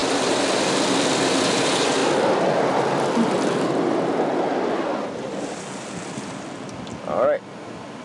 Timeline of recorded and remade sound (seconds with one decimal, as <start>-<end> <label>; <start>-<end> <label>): 0.0-8.0 recorded